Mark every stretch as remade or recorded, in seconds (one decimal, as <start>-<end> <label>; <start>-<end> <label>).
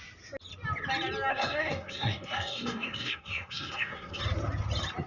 0.0-1.3 recorded; 1.3-4.2 remade; 4.2-5.1 recorded